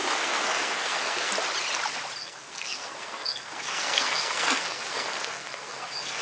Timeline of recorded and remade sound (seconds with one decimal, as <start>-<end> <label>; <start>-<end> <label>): 0.0-1.3 remade; 1.3-2.2 recorded; 2.2-6.2 remade